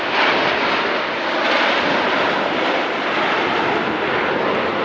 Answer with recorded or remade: recorded